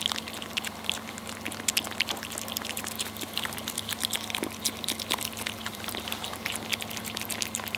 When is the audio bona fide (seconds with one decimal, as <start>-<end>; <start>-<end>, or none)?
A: 0.0-5.7; 6.5-7.8